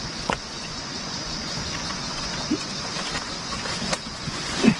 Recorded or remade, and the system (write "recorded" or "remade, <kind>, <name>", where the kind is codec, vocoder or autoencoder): remade, vocoder, Vocos